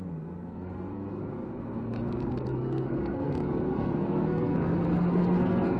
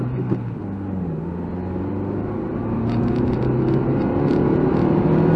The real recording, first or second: second